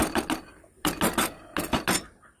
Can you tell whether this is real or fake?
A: real